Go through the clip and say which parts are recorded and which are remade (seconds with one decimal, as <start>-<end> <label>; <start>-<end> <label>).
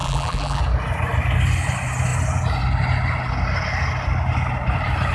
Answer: 0.0-0.6 remade; 0.6-5.1 recorded